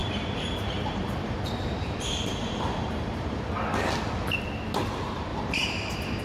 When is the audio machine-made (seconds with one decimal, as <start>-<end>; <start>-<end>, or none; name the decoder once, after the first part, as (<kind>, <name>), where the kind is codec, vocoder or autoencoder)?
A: 0.0-3.5 (vocoder, BigVGAN v2); 5.3-6.2